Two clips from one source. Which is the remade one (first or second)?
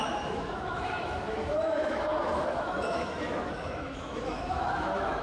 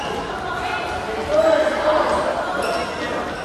first